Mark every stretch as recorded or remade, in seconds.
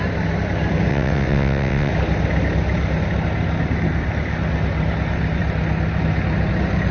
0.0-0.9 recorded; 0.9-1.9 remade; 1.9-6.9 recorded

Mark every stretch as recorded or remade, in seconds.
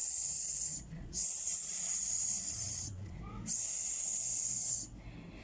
0.0-3.2 remade; 3.2-5.4 recorded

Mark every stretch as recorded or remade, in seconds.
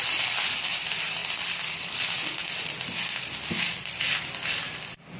0.0-5.2 remade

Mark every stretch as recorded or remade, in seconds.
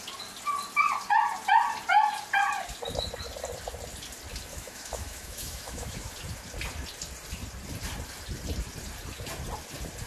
0.0-4.5 recorded; 4.5-6.1 remade; 6.1-10.1 recorded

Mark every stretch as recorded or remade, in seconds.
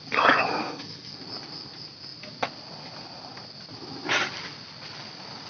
0.0-0.6 recorded; 0.6-1.2 remade; 1.2-5.5 recorded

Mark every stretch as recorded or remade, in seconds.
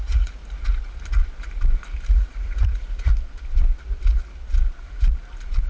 0.0-0.4 remade; 0.4-2.1 recorded; 2.1-3.1 remade; 3.1-5.7 recorded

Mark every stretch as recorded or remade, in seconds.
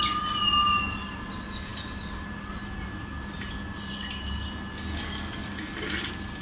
0.0-6.4 recorded